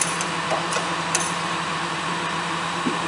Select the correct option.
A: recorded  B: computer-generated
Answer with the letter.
B